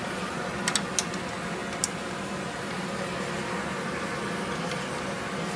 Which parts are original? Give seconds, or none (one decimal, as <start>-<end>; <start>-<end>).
0.0-5.6